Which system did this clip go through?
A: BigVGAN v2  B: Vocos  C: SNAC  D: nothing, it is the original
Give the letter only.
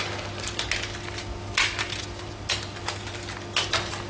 D